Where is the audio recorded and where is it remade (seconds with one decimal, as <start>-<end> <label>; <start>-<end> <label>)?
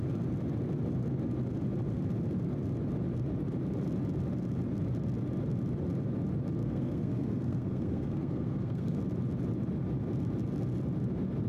0.0-6.6 recorded; 6.6-9.0 remade; 9.0-11.5 recorded